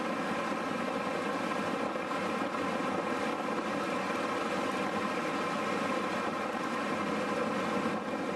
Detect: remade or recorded recorded